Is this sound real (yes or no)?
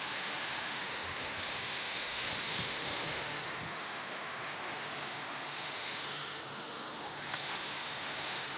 no